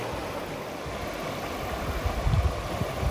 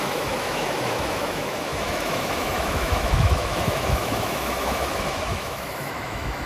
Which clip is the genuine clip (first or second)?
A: first